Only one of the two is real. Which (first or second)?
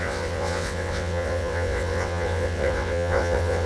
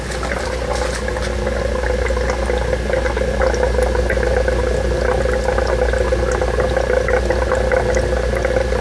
second